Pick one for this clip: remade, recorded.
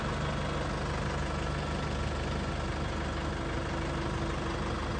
recorded